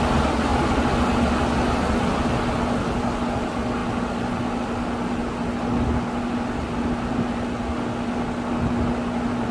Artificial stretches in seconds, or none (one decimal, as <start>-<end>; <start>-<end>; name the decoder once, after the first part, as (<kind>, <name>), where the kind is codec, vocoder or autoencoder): none